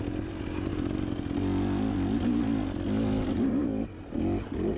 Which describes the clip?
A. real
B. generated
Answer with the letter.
A